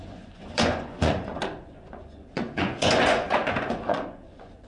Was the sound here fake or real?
fake